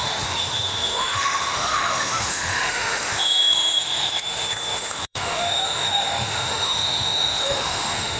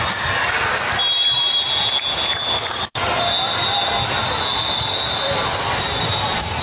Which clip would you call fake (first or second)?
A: first